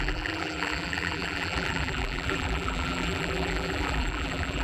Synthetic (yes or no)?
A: yes